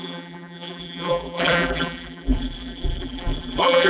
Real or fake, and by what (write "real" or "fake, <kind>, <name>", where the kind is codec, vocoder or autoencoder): fake, vocoder, BigVGAN v2